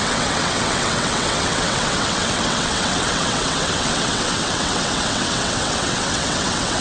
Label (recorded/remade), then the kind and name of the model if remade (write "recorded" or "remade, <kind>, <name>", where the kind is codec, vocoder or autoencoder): remade, vocoder, WaveNeXt